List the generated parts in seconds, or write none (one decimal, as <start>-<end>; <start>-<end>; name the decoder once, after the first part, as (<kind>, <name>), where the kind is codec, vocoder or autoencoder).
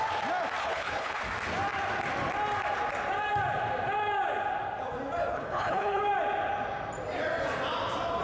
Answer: 0.6-1.2 (codec, HILCodec); 5.3-6.0